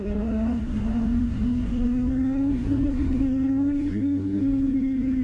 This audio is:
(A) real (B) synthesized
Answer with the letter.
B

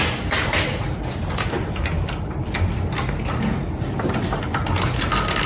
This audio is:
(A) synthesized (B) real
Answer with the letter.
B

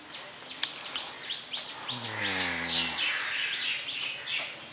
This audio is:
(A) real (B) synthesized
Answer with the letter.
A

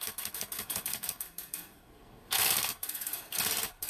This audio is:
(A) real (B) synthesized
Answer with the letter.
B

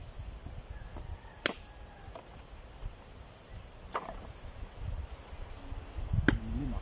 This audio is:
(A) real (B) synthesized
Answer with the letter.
A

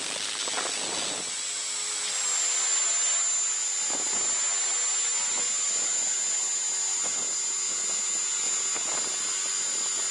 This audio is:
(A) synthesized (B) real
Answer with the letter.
B